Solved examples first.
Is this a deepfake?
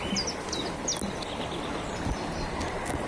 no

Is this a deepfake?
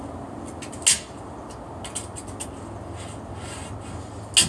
no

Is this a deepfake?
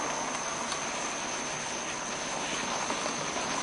no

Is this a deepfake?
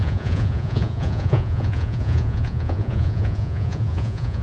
yes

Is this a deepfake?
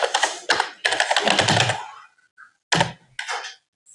no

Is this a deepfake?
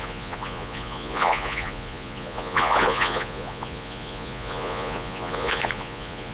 yes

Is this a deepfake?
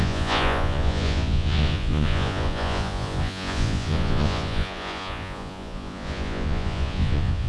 yes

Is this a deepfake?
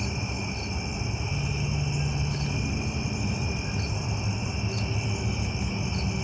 no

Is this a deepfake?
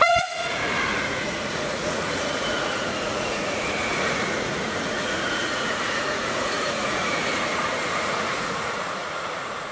yes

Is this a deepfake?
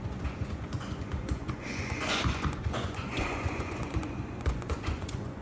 yes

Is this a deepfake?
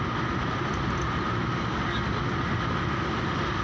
no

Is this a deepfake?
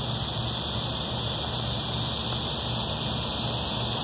no